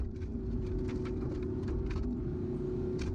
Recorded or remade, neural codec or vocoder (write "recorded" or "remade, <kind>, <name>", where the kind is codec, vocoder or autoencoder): recorded